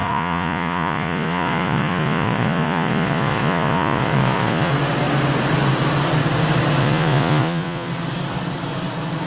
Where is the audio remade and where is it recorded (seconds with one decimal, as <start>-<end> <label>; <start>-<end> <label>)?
0.0-4.7 remade; 4.7-6.8 recorded; 6.8-7.9 remade; 7.9-9.3 recorded